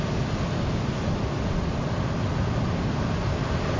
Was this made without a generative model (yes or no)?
yes